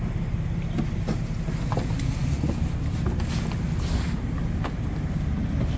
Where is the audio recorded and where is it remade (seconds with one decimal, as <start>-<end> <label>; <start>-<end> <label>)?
0.0-5.8 recorded